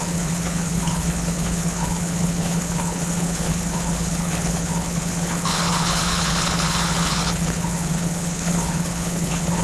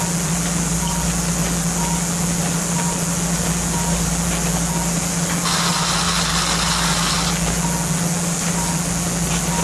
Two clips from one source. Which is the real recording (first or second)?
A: second